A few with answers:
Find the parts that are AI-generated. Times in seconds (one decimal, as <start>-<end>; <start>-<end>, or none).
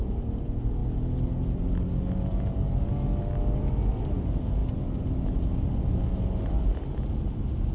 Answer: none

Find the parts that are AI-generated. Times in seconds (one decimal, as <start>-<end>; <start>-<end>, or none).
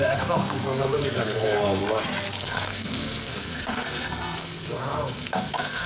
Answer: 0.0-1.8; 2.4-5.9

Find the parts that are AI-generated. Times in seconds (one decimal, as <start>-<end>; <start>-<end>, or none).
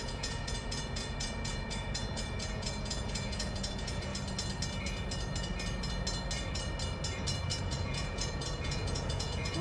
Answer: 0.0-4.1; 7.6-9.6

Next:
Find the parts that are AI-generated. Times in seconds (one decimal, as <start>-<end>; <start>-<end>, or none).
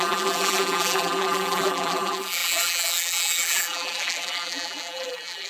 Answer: 0.0-5.5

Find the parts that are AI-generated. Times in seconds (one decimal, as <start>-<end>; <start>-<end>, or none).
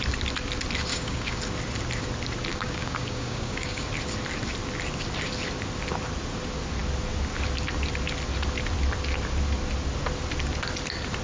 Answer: 0.9-1.4; 2.5-3.9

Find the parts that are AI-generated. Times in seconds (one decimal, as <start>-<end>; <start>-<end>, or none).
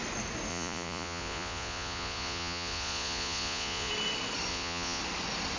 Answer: 0.5-3.9; 4.5-5.0